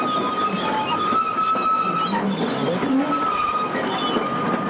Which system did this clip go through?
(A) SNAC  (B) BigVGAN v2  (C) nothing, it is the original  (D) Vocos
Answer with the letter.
C